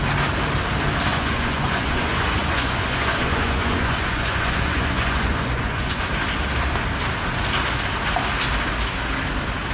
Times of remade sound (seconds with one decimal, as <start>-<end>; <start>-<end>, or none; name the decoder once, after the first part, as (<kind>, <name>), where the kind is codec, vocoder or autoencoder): 1.1-6.0 (vocoder, Vocos)